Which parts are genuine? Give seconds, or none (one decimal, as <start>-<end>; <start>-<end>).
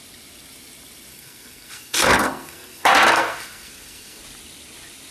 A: 0.0-1.1; 4.2-5.1